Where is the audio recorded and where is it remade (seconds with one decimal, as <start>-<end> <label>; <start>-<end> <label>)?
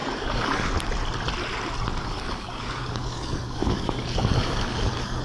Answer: 0.0-0.7 remade; 0.7-2.0 recorded; 2.0-5.2 remade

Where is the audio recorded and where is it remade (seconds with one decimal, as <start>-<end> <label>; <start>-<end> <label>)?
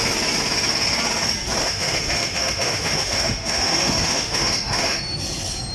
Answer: 0.0-1.6 recorded; 1.6-5.0 remade; 5.0-5.7 recorded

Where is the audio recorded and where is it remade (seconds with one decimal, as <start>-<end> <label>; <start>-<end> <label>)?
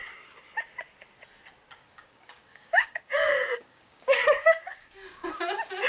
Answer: 0.0-1.8 recorded; 1.8-5.3 remade; 5.3-5.9 recorded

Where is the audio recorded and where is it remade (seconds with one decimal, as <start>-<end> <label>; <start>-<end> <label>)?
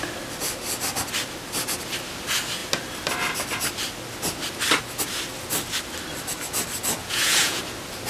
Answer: 0.0-7.0 recorded; 7.0-7.6 remade; 7.6-8.1 recorded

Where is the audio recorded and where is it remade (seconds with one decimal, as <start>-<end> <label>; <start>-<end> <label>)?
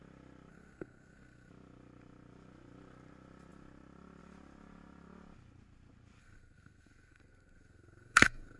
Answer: 0.0-0.5 recorded; 0.5-1.5 remade; 1.5-6.2 recorded; 6.2-8.6 remade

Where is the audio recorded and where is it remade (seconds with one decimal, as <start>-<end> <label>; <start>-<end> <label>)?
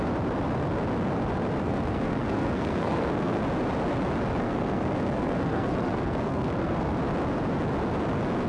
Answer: 0.0-1.6 recorded; 1.6-3.4 remade; 3.4-4.4 recorded; 4.4-6.9 remade; 6.9-8.5 recorded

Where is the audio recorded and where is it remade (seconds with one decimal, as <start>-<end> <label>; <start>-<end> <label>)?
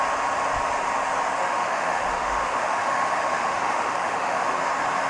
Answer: 0.0-1.4 recorded; 1.4-4.5 remade; 4.5-5.1 recorded